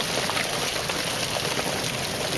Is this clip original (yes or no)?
yes